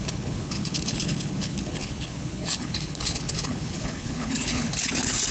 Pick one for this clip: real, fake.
fake